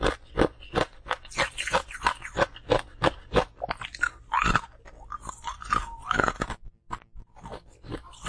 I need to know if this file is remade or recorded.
recorded